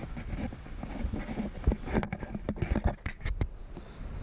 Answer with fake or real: real